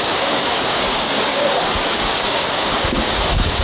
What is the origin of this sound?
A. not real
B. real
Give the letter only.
A